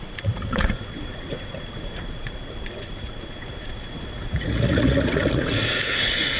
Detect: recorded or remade remade